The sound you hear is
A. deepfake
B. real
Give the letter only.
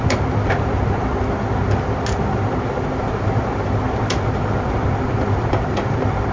B